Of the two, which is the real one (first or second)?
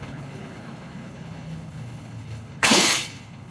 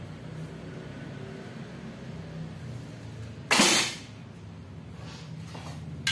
second